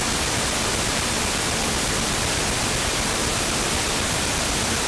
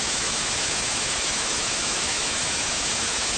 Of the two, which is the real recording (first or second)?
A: first